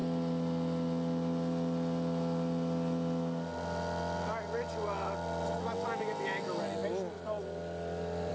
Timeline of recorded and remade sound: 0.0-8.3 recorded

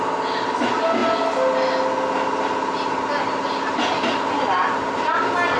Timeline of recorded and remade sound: 0.0-5.6 recorded

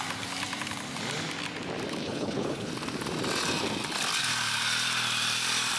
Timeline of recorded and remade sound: 0.0-2.0 recorded; 2.0-2.7 remade; 2.7-5.8 recorded